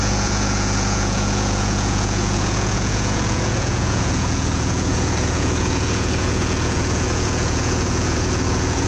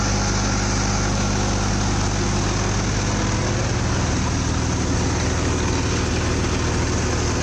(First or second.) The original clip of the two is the second